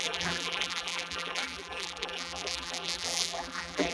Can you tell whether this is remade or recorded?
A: remade